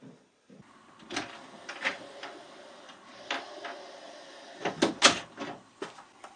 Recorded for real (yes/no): yes